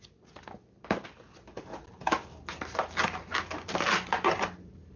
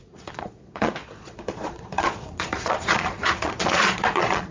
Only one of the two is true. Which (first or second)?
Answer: first